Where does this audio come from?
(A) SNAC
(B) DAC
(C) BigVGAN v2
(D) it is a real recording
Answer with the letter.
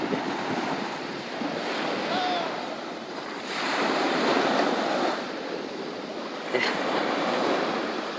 D